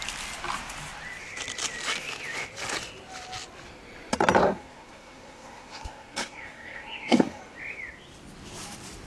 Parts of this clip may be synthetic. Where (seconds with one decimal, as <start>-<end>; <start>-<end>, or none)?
4.4-7.4